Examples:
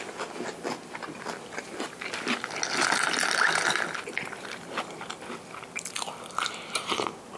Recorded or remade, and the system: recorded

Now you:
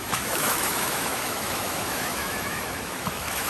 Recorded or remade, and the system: remade, autoencoder, DAC-VAE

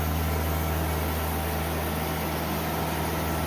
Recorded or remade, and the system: recorded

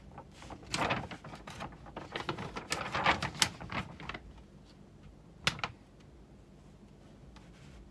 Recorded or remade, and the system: recorded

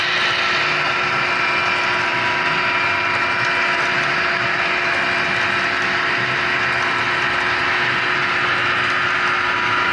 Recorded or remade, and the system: recorded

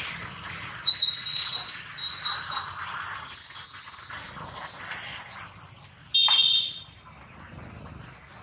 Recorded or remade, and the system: recorded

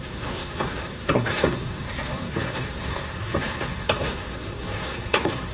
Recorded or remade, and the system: remade, codec, SNAC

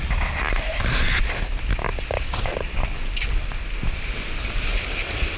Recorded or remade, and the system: recorded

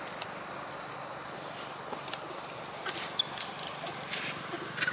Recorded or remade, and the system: recorded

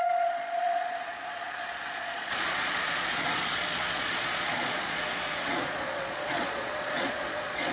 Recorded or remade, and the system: remade, vocoder, Vocos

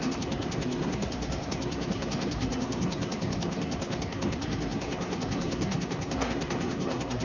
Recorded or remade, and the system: remade, codec, SNAC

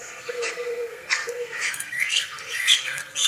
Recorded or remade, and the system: remade, codec, SNAC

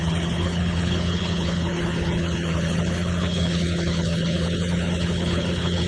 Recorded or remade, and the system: remade, codec, HILCodec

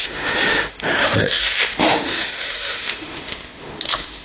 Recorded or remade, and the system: remade, autoencoder, DAC-VAE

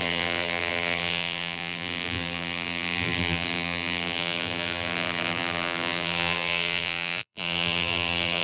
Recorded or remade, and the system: remade, vocoder, BigVGAN v2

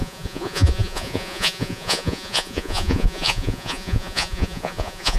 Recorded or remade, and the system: remade, vocoder, Vocos